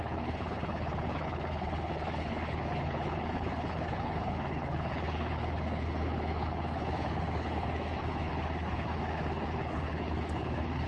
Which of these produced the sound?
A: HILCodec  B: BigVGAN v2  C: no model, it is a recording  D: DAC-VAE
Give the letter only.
A